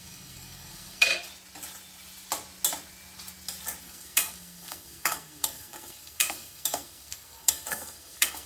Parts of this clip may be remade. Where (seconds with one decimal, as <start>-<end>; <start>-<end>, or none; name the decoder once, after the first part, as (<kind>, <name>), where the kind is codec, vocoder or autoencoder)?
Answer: 0.0-1.1 (codec, SNAC); 3.8-8.5